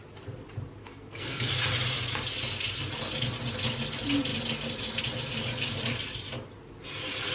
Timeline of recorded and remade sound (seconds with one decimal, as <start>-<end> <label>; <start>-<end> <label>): 0.0-0.8 recorded; 0.8-1.5 remade; 1.5-7.3 recorded